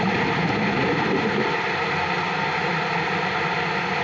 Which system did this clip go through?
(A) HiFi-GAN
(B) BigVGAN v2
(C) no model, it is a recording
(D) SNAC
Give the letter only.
C